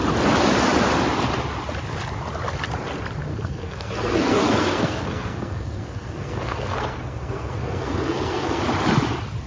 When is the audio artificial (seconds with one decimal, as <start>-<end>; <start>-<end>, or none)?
3.3-8.6

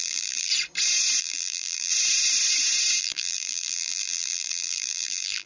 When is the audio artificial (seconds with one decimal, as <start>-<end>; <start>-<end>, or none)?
0.0-0.5; 1.2-1.9; 3.0-5.5

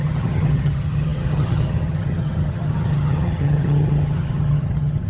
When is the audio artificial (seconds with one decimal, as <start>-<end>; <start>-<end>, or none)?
0.0-5.1

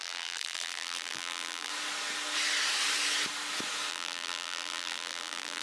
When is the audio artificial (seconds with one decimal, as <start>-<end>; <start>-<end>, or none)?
0.0-1.7; 3.9-5.6

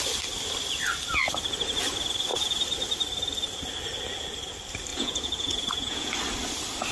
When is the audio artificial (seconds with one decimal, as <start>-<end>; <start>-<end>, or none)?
4.9-6.1

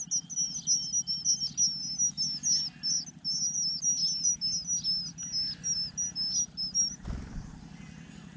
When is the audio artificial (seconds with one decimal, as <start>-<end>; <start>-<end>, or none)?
none

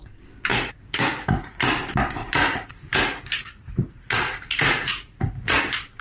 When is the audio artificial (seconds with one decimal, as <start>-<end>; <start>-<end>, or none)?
0.5-1.8; 2.2-5.6